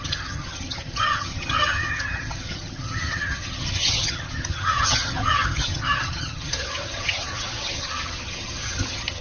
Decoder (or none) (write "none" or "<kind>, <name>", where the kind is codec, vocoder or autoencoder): vocoder, HiFi-GAN